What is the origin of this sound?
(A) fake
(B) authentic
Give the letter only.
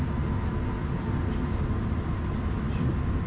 B